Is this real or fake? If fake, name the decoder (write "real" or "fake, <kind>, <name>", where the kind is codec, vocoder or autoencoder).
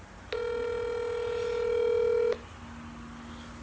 real